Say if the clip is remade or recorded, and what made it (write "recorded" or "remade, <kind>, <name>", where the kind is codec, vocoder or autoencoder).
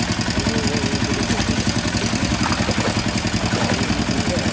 recorded